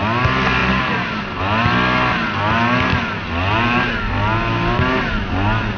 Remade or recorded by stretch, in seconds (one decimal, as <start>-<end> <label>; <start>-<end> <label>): 0.0-0.6 recorded; 0.6-1.4 remade; 1.4-5.8 recorded